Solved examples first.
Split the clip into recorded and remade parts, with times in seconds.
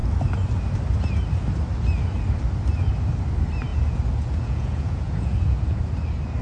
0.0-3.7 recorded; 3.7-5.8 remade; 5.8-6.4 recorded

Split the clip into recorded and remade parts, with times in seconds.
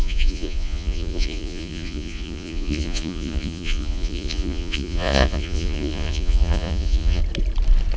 0.0-7.2 remade; 7.2-8.0 recorded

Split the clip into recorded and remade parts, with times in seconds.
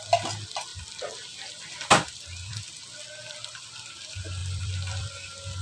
0.0-4.4 recorded; 4.4-5.1 remade; 5.1-5.6 recorded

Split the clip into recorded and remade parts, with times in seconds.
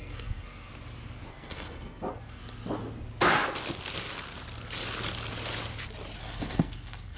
0.0-0.7 remade; 0.7-1.3 recorded; 1.3-2.4 remade; 2.4-6.2 recorded; 6.2-7.2 remade